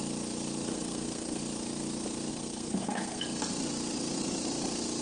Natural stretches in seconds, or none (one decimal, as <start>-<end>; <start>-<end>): 0.0-0.7; 1.4-2.3; 3.2-5.0

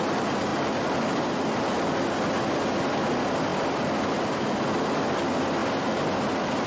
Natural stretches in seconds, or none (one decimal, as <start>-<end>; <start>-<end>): 0.0-6.7

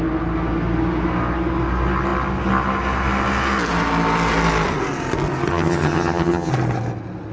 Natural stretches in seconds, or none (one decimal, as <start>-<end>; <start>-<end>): 0.0-5.5; 6.5-7.3

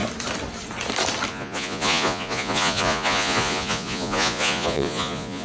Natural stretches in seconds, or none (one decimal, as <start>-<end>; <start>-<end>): 0.0-1.3